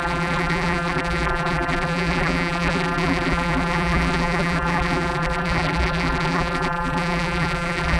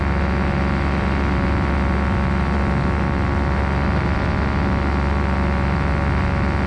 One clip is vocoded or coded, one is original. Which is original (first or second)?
second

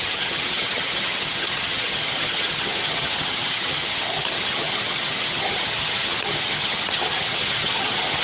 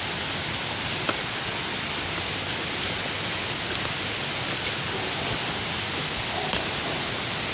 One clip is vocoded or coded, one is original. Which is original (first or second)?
second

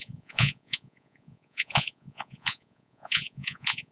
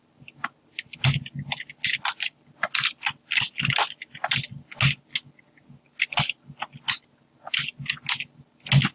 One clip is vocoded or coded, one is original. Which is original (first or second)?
second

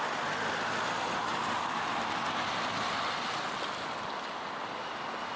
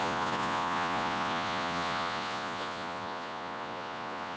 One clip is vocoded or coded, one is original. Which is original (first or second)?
first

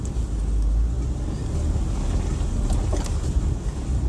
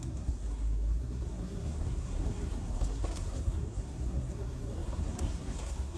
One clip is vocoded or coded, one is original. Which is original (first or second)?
first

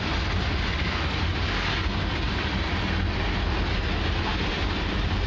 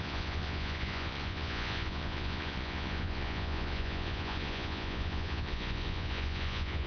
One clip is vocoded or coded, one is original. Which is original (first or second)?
first